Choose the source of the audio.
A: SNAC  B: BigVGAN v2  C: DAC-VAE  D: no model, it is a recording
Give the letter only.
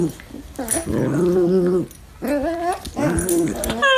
D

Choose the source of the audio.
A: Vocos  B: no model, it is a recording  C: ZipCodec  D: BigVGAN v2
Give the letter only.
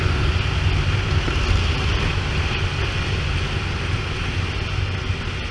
B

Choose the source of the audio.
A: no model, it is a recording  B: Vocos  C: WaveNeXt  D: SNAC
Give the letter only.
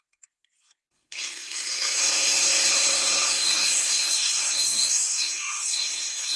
D